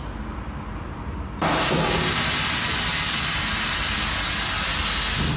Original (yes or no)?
yes